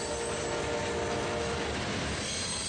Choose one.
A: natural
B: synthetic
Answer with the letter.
A